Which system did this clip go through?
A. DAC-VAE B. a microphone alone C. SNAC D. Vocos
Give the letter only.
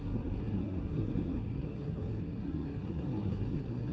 C